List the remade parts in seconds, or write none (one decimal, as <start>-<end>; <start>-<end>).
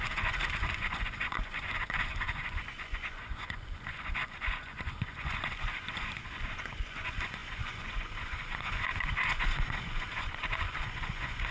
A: 0.0-11.5